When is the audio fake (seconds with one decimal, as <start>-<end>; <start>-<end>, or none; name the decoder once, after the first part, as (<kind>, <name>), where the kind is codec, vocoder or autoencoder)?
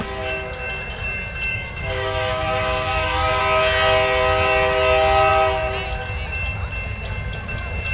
1.5-3.4 (codec, DAC)